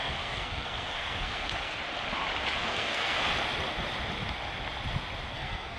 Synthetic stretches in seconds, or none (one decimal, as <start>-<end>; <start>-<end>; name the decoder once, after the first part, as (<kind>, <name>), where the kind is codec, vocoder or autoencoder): 0.0-1.8 (codec, SNAC); 2.6-3.3; 5.3-5.8